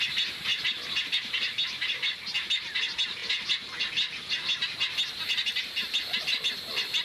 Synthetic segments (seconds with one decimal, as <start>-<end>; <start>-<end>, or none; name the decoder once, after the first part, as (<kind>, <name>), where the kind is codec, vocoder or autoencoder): 0.5-1.3 (vocoder, BigVGAN v2)